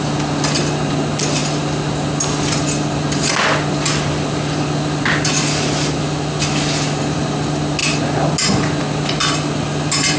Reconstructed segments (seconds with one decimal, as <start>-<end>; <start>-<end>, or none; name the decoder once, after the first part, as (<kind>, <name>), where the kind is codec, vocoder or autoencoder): none